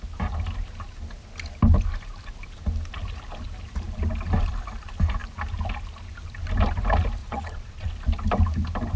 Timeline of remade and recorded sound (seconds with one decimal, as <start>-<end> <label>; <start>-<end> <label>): 0.0-7.2 recorded; 7.2-7.9 remade; 7.9-9.0 recorded